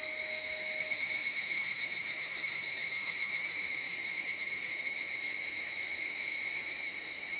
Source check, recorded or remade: remade